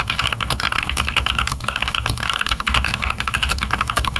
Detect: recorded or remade remade